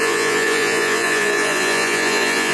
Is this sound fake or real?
fake